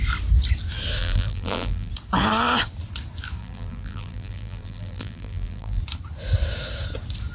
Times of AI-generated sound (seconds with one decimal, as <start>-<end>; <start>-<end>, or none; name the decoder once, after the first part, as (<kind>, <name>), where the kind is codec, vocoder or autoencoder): 1.0-1.9 (vocoder, BigVGAN v2); 3.4-5.8